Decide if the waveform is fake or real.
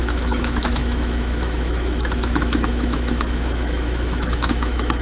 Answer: fake